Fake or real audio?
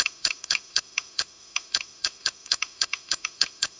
fake